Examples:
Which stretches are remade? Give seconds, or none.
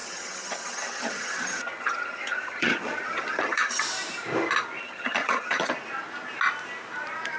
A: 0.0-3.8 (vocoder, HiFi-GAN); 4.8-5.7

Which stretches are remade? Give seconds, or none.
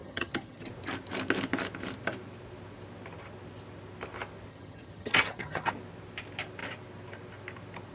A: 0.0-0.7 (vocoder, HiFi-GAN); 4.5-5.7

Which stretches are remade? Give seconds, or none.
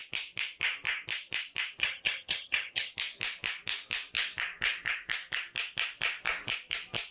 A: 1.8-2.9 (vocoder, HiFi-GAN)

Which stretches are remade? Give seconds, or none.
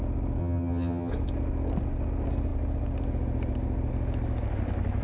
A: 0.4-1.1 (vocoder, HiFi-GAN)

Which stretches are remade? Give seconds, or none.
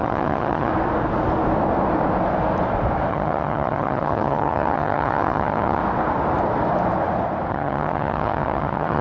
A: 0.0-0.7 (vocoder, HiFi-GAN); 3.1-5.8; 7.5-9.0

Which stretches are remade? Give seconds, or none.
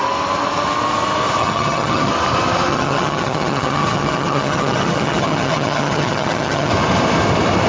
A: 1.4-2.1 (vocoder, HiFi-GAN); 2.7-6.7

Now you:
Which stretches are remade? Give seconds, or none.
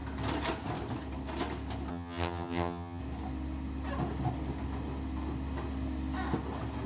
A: 1.9-3.0 (vocoder, HiFi-GAN)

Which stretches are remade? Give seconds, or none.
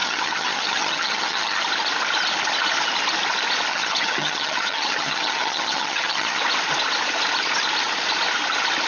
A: 0.0-1.6 (vocoder, HiFi-GAN); 3.7-6.4